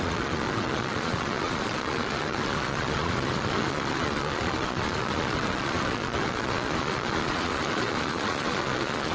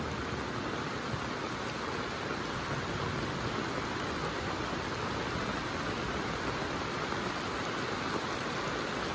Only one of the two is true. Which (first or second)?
second